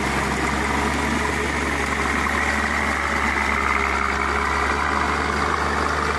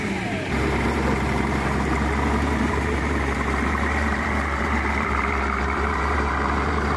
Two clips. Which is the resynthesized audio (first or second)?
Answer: second